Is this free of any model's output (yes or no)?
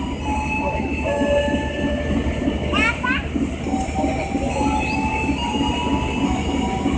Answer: yes